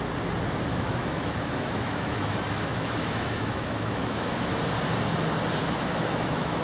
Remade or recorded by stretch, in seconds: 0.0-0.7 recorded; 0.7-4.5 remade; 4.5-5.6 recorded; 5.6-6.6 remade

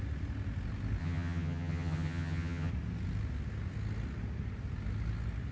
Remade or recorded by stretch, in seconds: 0.0-1.0 recorded; 1.0-2.7 remade; 2.7-5.5 recorded

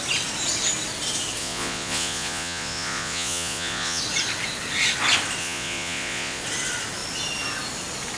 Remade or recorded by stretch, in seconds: 0.0-1.4 recorded; 1.4-4.0 remade; 4.0-5.4 recorded; 5.4-6.4 remade; 6.4-8.2 recorded

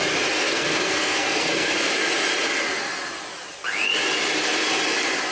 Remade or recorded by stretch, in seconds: 0.0-0.4 recorded; 0.4-1.9 remade; 1.9-5.3 recorded

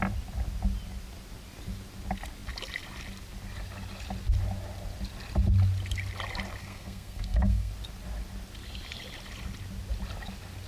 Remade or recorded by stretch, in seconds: 0.0-6.6 recorded; 6.6-7.7 remade; 7.7-10.7 recorded

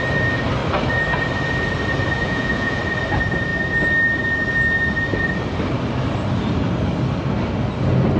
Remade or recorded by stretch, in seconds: 0.0-2.2 recorded; 2.2-2.8 remade; 2.8-8.2 recorded